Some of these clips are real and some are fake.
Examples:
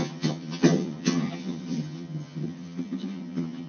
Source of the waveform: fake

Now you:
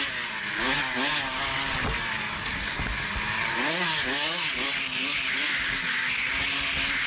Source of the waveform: real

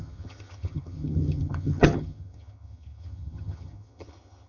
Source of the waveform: fake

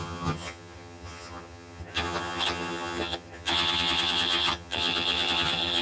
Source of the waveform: fake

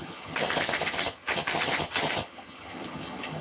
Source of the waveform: fake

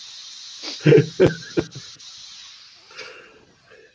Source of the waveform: real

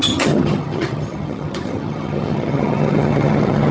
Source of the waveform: fake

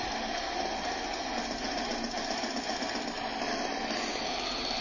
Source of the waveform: real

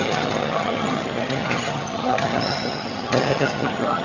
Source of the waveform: fake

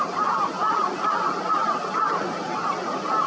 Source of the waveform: real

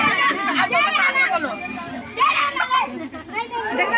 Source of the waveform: real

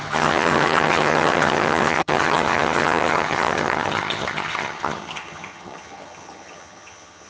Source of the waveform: fake